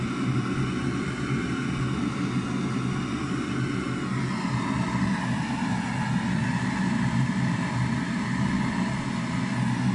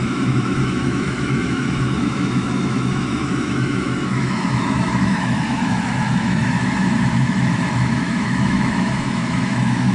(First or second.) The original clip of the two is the first